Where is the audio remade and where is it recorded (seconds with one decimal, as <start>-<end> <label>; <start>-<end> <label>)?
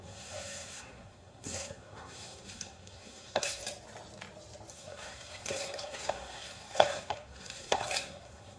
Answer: 0.0-3.6 remade; 3.6-4.7 recorded; 4.7-8.6 remade